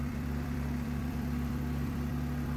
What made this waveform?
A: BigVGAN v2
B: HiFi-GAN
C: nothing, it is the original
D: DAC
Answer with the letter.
A